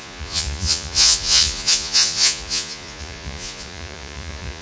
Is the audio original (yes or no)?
no